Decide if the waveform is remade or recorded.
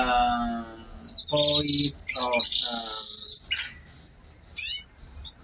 recorded